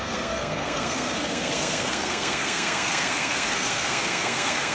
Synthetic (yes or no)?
yes